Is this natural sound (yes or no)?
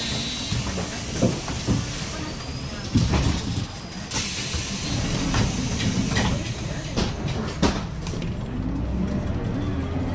yes